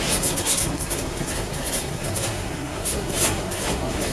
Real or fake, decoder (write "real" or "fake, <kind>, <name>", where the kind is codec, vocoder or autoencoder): fake, codec, SNAC